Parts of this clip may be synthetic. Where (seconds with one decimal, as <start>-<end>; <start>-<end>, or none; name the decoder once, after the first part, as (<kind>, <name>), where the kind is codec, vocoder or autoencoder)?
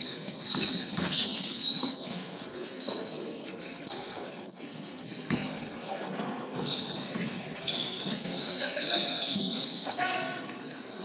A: 0.0-11.0 (codec, SNAC)